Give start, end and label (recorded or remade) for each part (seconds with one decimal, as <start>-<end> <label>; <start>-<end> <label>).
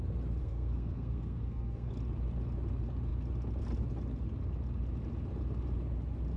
0.0-0.4 recorded; 0.4-1.9 remade; 1.9-6.4 recorded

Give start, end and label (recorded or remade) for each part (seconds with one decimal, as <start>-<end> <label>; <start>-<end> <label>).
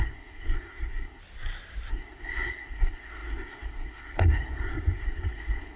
0.0-1.2 remade; 1.2-1.9 recorded; 1.9-5.8 remade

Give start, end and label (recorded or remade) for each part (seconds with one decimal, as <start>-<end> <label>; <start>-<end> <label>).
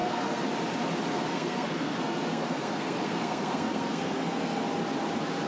0.0-0.5 remade; 0.5-1.3 recorded; 1.3-4.6 remade; 4.6-5.5 recorded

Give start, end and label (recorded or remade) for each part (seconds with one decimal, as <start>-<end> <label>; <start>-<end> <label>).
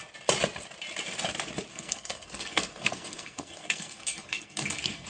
0.0-1.7 recorded; 1.7-5.1 remade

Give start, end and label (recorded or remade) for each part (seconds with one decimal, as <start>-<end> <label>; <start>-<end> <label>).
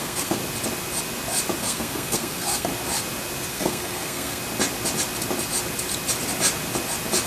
0.0-0.4 remade; 0.4-1.6 recorded; 1.6-2.7 remade; 2.7-3.5 recorded; 3.5-4.4 remade; 4.4-7.3 recorded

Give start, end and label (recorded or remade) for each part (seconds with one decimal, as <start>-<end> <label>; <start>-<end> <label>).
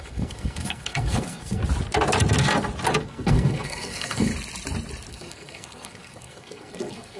0.0-1.6 remade; 1.6-3.0 recorded; 3.0-4.3 remade; 4.3-5.1 recorded; 5.1-7.2 remade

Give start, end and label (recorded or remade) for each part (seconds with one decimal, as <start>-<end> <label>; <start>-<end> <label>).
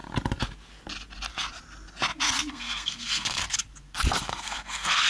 0.0-2.5 recorded; 2.5-3.4 remade; 3.4-4.2 recorded; 4.2-5.1 remade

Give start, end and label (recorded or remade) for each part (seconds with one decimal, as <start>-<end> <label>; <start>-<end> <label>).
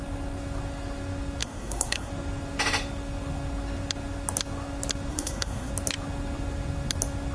0.0-1.4 recorded; 1.4-2.1 remade; 2.1-5.1 recorded; 5.1-5.7 remade; 5.7-7.3 recorded